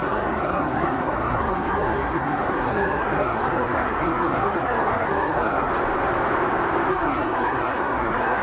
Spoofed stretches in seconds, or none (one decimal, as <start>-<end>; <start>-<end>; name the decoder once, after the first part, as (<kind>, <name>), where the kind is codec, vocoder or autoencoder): 0.0-5.7 (codec, SNAC); 6.9-8.4